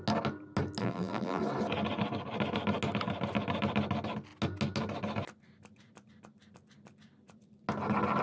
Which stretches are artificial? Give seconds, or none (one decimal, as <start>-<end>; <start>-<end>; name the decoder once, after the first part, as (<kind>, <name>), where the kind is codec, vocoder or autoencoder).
0.8-1.4 (vocoder, BigVGAN v2)